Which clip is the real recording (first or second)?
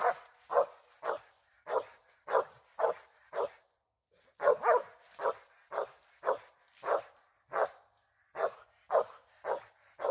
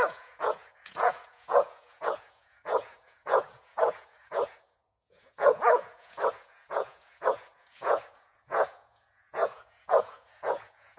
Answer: first